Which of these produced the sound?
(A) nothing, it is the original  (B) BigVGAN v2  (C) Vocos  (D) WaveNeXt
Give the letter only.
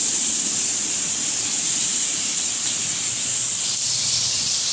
A